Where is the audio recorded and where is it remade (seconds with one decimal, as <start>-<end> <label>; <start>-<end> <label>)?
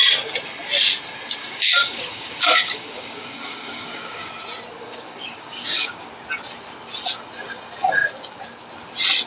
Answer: 0.0-1.4 recorded; 1.4-4.3 remade; 4.3-4.8 recorded; 4.8-6.1 remade; 6.1-9.3 recorded